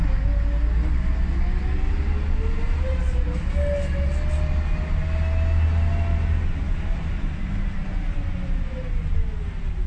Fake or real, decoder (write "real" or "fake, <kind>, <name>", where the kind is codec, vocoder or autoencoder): real